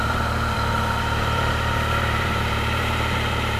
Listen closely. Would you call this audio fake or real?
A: fake